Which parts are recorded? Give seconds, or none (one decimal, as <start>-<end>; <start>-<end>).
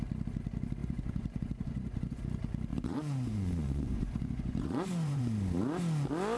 0.0-0.8; 2.2-2.7; 5.2-6.4